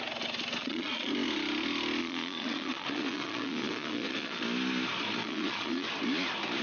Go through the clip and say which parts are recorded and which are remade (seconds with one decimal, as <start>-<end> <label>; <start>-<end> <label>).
0.0-0.6 recorded; 0.6-1.1 remade; 1.1-2.0 recorded; 2.0-4.4 remade; 4.4-5.2 recorded; 5.2-5.9 remade; 5.9-6.6 recorded